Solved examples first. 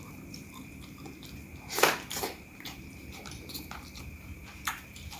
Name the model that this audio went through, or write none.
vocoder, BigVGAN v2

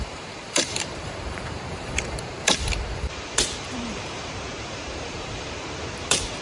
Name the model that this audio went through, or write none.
vocoder, BigVGAN v2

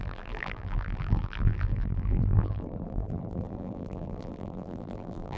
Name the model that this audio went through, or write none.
vocoder, BigVGAN v2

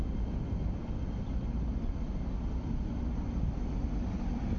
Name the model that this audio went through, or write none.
none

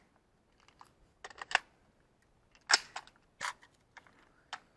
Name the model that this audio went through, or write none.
none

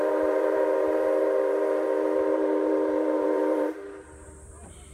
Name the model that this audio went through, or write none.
vocoder, BigVGAN v2